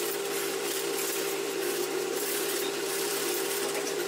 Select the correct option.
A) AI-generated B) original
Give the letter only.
A